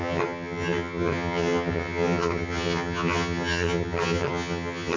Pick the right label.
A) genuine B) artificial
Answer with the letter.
B